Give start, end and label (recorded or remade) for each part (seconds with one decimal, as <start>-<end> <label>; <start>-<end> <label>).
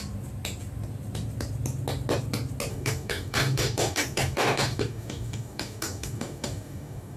0.0-2.7 recorded; 2.7-7.2 remade